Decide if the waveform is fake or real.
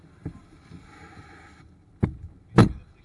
real